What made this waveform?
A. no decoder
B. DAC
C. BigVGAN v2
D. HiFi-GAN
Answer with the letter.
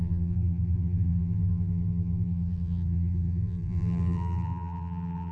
C